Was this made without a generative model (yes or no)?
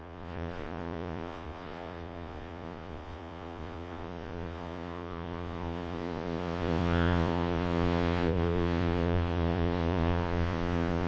no